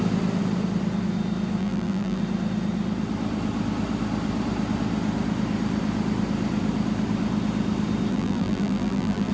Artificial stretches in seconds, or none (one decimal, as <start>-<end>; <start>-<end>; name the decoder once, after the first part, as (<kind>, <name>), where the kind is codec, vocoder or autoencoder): 1.6-2.2 (vocoder, BigVGAN v2); 8.1-9.3